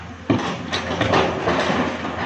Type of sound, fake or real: real